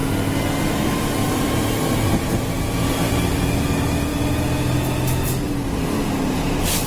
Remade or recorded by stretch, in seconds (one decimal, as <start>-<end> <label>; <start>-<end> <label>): 0.0-6.9 recorded